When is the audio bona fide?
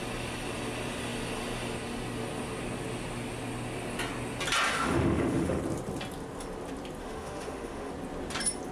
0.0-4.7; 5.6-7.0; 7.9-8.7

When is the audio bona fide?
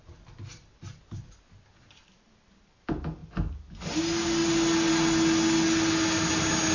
0.0-6.7